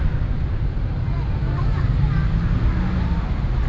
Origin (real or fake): real